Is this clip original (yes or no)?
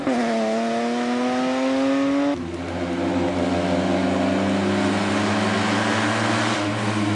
yes